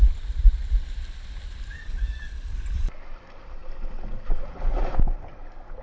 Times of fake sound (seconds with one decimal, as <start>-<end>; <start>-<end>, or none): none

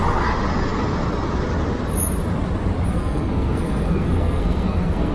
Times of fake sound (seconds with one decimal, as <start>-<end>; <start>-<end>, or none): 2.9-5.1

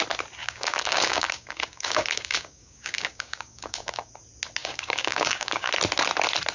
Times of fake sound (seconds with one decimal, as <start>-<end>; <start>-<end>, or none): 0.4-4.1; 4.6-5.7

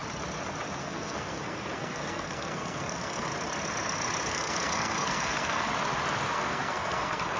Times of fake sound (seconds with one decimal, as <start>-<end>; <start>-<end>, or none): 0.8-3.3; 4.3-5.7; 6.3-7.4

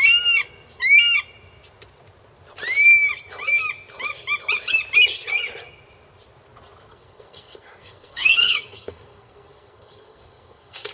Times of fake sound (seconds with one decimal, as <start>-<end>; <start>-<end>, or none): 6.9-10.9

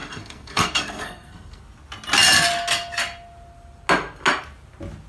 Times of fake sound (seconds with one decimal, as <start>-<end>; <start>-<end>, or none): 0.0-1.6

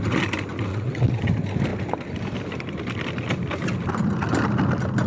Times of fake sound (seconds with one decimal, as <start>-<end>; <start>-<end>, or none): 0.7-1.2

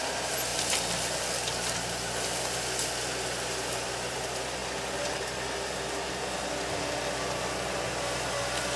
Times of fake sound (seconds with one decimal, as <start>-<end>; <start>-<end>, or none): none